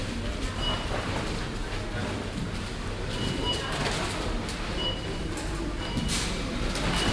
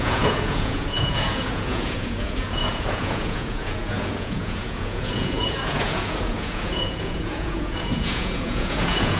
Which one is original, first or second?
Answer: first